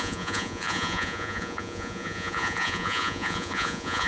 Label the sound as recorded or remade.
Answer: remade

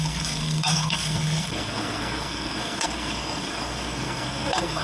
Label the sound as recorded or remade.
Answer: remade